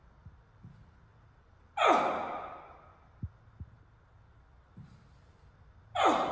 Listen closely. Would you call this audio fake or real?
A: real